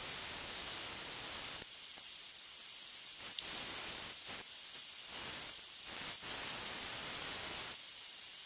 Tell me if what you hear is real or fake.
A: real